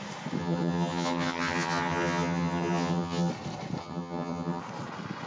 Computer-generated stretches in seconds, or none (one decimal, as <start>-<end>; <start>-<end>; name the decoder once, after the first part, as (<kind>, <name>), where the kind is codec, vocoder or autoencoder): 0.4-3.3 (vocoder, HiFi-GAN); 3.8-4.6